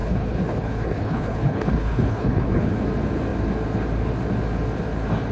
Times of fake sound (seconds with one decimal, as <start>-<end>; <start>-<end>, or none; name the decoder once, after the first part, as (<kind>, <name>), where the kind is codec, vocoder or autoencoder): 0.0-2.7 (codec, HILCodec)